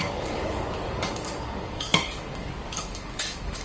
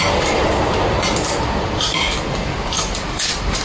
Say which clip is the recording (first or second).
second